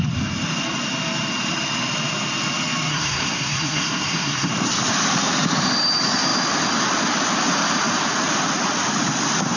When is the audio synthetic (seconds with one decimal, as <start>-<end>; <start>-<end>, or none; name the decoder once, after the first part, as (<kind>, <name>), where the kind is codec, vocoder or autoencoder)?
2.9-4.5 (codec, SNAC)